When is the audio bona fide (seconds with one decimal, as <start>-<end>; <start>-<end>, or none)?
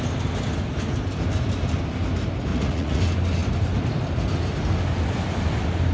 0.0-2.5; 3.0-5.9